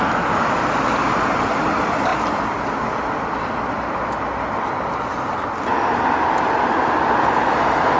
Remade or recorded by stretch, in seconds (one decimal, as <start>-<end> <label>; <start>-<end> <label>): 0.0-8.0 recorded